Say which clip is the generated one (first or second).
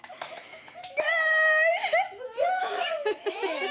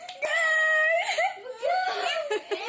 first